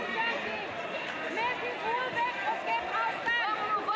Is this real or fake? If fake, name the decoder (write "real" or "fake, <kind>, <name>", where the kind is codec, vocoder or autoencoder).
real